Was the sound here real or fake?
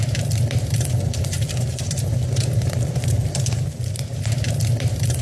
fake